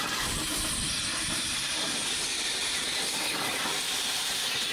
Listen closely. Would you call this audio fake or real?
fake